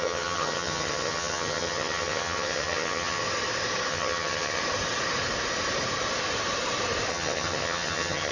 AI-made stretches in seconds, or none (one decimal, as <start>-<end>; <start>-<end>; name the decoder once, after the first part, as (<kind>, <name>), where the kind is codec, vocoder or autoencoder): 0.0-3.2 (vocoder, HiFi-GAN); 3.9-4.6; 7.1-8.3